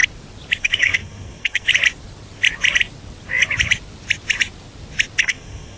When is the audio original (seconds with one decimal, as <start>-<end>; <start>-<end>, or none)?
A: 0.0-0.6; 1.7-5.2